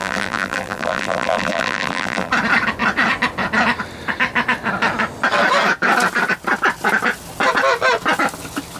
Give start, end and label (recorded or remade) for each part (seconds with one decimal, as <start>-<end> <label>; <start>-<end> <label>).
0.0-2.3 remade; 2.3-8.8 recorded